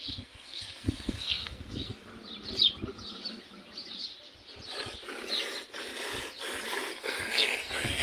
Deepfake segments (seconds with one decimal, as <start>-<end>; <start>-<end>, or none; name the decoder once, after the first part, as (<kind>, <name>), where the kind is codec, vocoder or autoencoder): 0.0-2.1 (codec, SNAC); 6.9-8.0